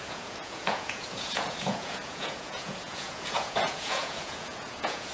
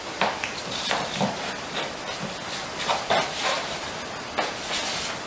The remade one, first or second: first